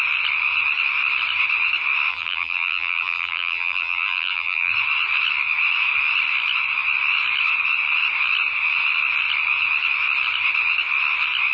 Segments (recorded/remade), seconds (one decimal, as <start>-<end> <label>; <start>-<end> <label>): 0.0-2.1 recorded; 2.1-4.7 remade; 4.7-11.5 recorded